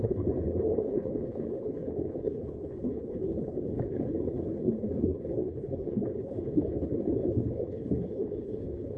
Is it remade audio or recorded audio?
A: remade